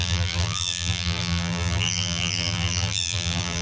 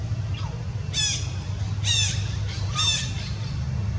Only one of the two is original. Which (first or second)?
second